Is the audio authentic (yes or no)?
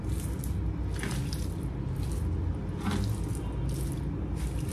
yes